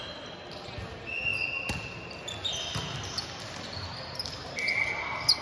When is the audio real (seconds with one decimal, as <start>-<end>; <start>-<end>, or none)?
0.0-5.4